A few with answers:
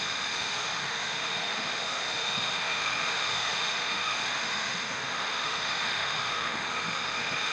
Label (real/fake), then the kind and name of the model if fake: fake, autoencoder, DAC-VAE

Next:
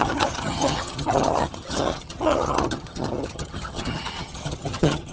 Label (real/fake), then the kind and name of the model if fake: fake, vocoder, HiFi-GAN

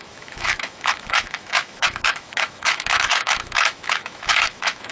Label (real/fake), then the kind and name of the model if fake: fake, autoencoder, DAC-VAE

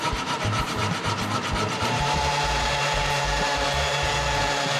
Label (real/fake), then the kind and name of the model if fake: fake, vocoder, BigVGAN v2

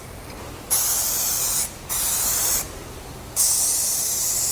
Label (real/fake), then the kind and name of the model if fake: fake, vocoder, BigVGAN v2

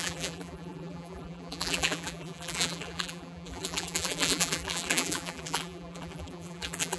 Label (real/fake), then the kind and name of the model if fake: fake, vocoder, BigVGAN v2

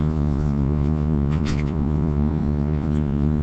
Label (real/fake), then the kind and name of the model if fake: fake, vocoder, Vocos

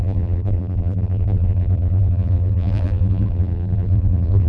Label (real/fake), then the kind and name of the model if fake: fake, vocoder, BigVGAN v2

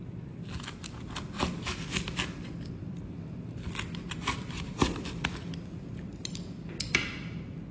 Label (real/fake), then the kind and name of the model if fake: real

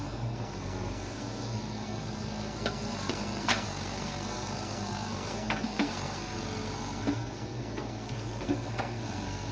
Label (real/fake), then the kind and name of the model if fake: fake, codec, SNAC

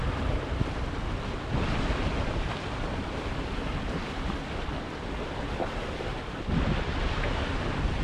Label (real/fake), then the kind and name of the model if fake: real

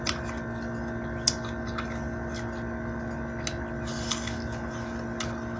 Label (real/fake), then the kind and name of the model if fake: real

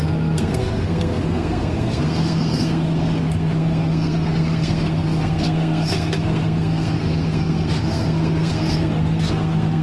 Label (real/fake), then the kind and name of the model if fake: fake, codec, SNAC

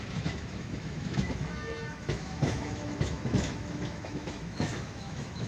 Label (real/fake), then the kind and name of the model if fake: fake, autoencoder, DAC-VAE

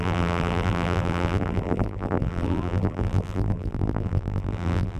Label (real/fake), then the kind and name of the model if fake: fake, vocoder, BigVGAN v2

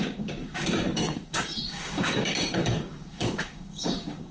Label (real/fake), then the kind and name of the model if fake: fake, codec, DAC